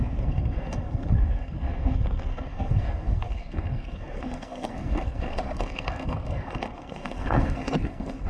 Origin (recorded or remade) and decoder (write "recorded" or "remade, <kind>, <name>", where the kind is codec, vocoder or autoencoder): remade, codec, SNAC